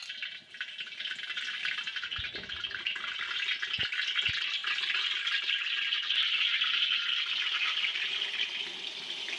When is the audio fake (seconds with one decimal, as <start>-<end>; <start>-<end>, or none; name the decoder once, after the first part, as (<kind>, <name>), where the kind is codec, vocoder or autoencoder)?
none